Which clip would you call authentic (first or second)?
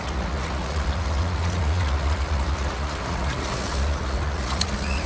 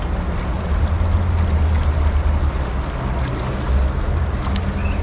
second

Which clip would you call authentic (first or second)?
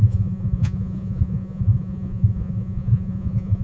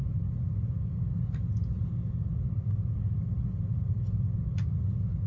second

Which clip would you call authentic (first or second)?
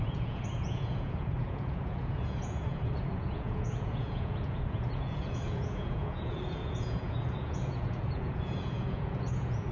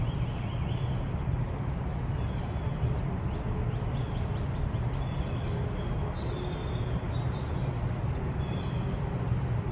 second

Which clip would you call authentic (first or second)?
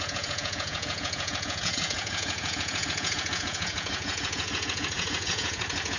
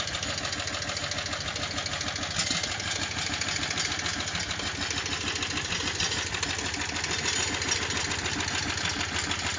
second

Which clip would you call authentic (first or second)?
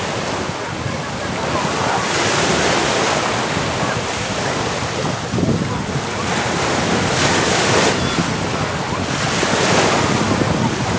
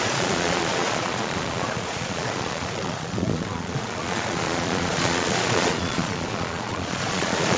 first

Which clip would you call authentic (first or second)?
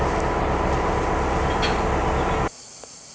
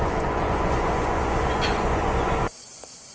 first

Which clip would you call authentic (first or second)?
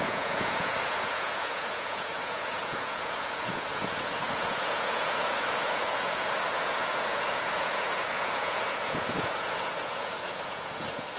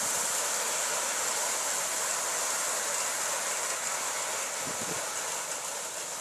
second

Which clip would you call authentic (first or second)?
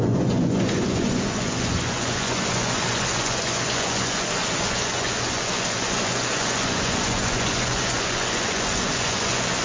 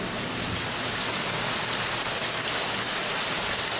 second